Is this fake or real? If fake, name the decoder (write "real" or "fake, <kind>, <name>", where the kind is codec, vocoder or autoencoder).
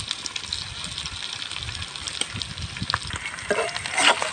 real